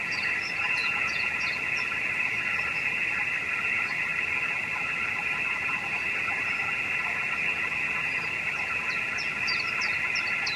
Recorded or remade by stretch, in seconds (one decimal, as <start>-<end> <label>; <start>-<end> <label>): 0.0-0.8 recorded; 0.8-1.3 remade; 1.3-10.6 recorded